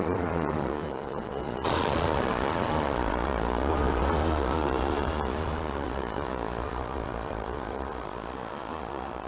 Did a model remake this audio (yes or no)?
yes